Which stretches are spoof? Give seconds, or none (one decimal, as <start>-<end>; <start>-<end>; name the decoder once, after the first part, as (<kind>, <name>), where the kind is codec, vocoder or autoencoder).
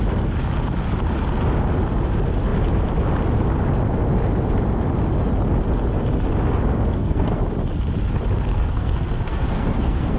6.9-7.4 (codec, SNAC); 8.5-10.2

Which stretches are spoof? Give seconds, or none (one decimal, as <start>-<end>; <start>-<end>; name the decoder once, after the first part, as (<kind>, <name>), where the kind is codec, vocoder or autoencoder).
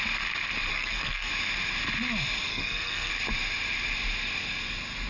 0.7-1.3 (codec, SNAC); 2.5-3.1